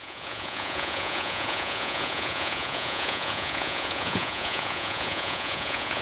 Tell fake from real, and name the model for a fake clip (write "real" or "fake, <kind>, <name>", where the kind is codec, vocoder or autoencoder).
fake, vocoder, Vocos